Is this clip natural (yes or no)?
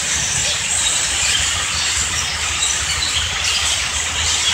no